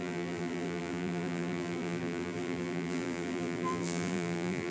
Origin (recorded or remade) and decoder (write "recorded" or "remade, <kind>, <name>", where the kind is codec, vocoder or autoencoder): remade, vocoder, BigVGAN v2